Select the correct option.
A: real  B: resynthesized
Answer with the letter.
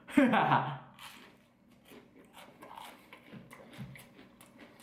A